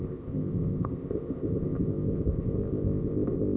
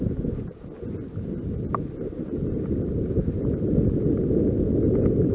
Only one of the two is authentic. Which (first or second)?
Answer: second